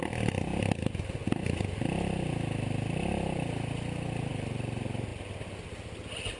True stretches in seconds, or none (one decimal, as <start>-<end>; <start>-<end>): 0.0-6.4

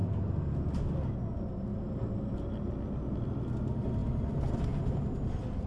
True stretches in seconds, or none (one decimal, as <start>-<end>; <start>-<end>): 0.0-1.7; 2.7-5.7